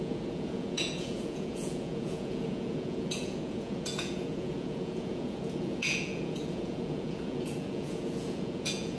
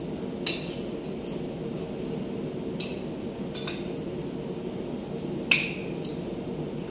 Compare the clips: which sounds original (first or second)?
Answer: second